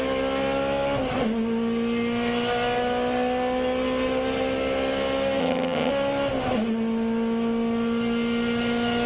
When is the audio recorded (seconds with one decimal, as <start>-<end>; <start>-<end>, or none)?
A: 0.0-5.4; 5.9-9.1